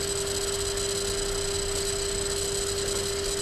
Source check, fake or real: real